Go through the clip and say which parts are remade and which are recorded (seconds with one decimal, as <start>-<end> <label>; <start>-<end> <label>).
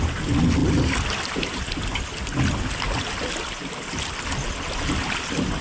0.0-5.6 recorded